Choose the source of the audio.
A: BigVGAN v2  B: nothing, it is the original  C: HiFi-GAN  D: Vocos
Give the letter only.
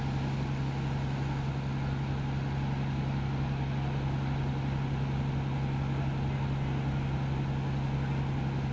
B